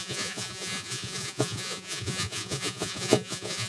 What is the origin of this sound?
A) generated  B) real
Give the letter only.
A